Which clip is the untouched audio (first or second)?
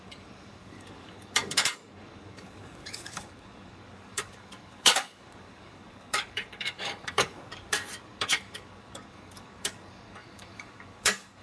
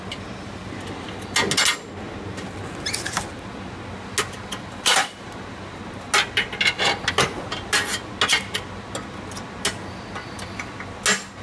second